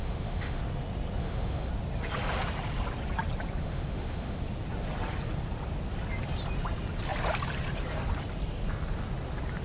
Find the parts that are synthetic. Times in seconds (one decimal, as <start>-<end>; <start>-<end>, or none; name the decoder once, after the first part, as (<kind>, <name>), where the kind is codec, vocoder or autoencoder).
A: 0.0-0.6 (autoencoder, DAC-VAE); 1.2-1.7; 3.6-4.4

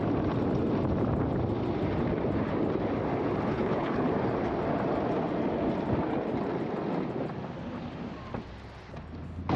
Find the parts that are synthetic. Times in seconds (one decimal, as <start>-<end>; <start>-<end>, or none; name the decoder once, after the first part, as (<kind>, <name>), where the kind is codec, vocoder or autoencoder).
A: 3.5-4.1 (codec, HILCodec)

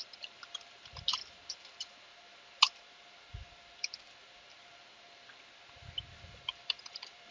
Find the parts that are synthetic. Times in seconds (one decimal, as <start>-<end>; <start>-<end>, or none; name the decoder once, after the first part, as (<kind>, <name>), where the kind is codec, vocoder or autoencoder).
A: none

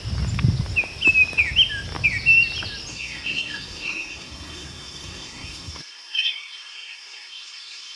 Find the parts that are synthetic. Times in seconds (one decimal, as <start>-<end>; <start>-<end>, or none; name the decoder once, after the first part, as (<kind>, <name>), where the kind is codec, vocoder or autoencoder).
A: 2.9-8.0 (codec, SNAC)